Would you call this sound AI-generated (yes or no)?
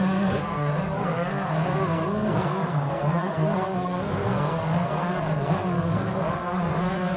yes